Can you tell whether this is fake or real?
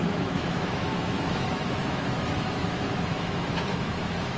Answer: fake